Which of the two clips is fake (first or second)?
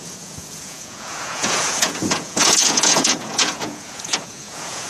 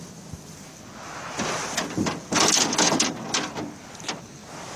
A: first